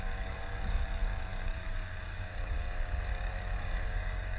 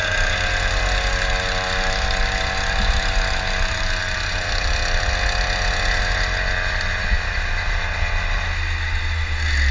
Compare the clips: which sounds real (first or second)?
second